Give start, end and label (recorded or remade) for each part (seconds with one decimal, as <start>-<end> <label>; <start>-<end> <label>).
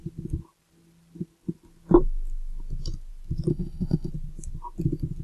0.0-3.5 recorded; 3.5-4.1 remade; 4.1-5.2 recorded